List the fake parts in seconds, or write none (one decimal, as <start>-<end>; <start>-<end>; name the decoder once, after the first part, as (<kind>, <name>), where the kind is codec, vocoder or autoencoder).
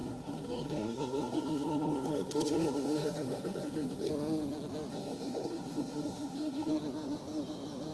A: 0.0-4.1 (codec, SNAC); 4.9-6.7